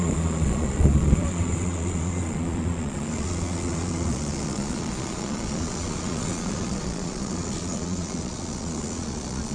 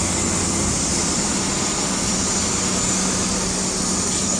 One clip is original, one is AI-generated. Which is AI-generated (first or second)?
first